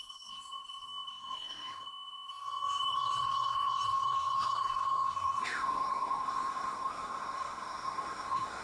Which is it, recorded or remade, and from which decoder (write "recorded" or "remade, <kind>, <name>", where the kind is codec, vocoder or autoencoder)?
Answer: remade, codec, SNAC